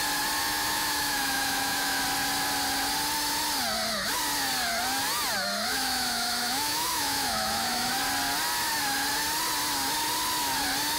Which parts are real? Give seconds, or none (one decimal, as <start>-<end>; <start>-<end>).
0.0-0.4; 2.0-5.7; 7.9-11.0